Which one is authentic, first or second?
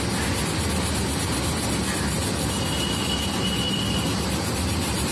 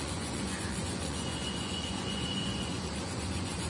first